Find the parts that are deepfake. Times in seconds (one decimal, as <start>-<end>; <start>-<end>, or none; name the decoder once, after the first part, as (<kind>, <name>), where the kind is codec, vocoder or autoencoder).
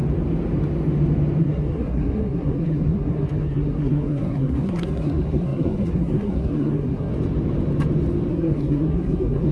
1.4-7.1 (codec, SNAC); 8.3-9.5